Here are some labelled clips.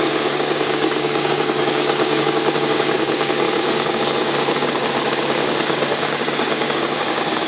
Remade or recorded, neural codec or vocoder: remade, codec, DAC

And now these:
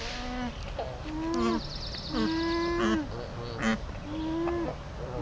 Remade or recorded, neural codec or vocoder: recorded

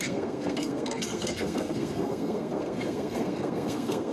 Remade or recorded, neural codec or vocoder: remade, codec, SNAC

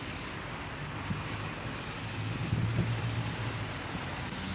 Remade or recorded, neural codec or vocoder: recorded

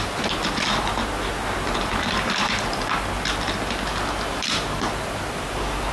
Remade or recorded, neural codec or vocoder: recorded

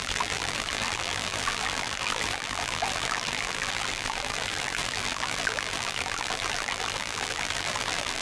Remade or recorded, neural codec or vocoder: remade, vocoder, BigVGAN v2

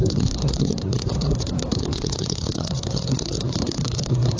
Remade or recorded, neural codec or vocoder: remade, codec, SNAC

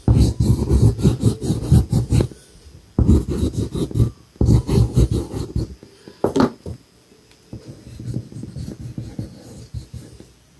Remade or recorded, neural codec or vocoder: recorded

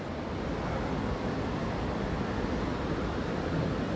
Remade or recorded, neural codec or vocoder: recorded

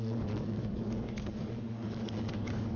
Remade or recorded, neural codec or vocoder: remade, codec, DAC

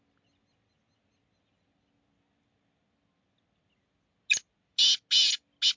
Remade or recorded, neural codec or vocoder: recorded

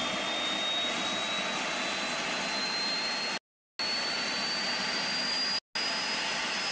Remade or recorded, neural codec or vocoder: recorded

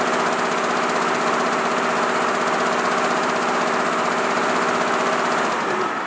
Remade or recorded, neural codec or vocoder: recorded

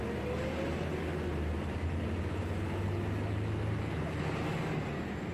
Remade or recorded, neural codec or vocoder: recorded